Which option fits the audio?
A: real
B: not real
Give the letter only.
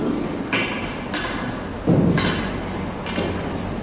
A